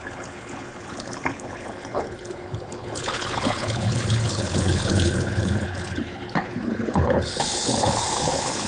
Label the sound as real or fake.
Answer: fake